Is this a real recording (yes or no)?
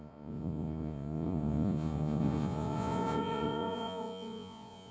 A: no